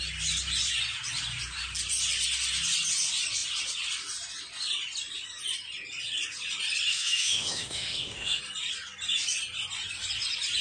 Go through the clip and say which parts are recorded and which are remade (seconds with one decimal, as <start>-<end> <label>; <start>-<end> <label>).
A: 0.0-6.9 recorded; 6.9-8.4 remade; 8.4-10.6 recorded